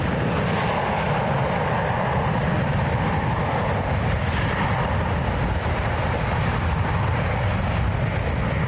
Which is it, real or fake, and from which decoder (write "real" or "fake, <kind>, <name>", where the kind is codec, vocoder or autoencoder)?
real